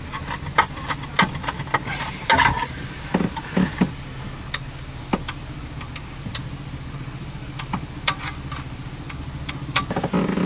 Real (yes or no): yes